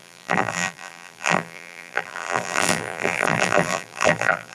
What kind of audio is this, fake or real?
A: fake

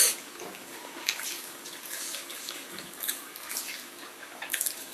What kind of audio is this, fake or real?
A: fake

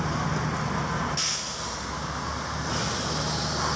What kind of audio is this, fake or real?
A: real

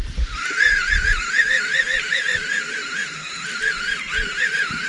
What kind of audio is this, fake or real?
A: real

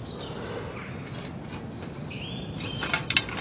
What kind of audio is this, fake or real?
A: real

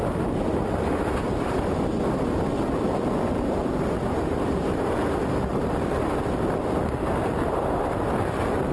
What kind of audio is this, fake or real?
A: real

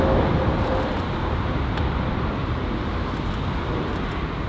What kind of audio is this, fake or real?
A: real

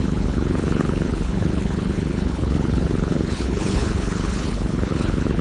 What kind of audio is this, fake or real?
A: fake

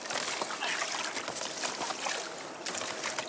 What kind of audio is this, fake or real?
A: real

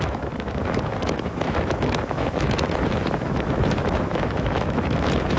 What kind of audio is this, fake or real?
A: fake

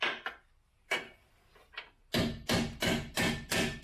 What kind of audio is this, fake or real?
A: real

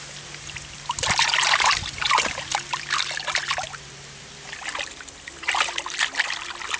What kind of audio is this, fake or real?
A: real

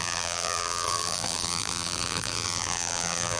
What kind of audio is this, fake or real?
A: fake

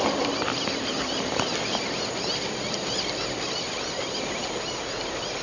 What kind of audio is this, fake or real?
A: real